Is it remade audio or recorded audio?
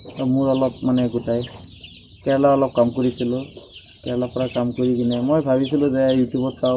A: recorded